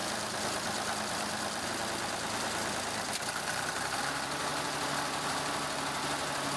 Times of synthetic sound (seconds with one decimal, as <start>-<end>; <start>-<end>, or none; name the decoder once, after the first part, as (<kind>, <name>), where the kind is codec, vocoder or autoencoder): 0.0-4.5 (vocoder, BigVGAN v2)